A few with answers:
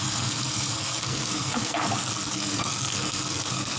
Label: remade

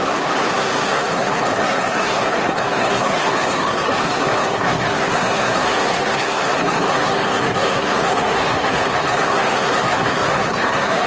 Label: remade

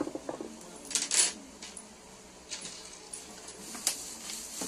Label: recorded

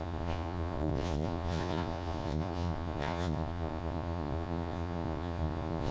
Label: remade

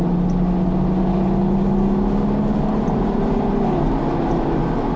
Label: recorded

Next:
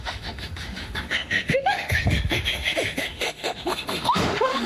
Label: remade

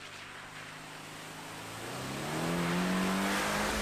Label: recorded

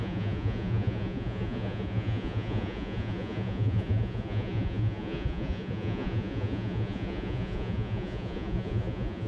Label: remade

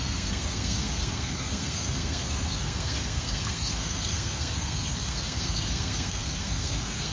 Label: remade